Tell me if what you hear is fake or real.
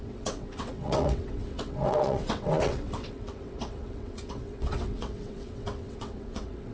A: fake